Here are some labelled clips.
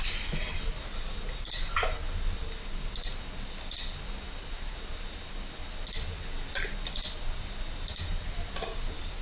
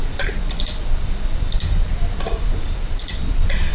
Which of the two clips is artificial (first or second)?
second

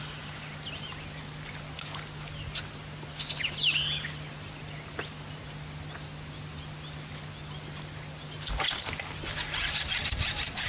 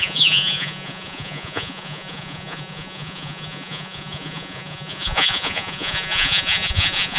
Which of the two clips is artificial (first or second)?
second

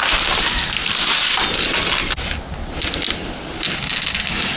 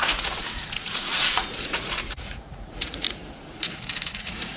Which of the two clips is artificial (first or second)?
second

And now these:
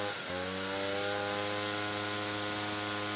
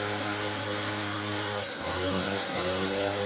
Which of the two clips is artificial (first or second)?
second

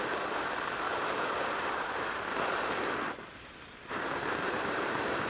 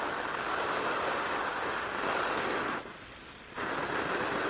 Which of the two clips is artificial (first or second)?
first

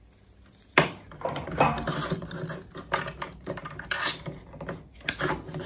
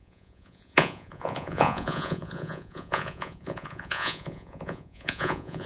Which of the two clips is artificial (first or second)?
second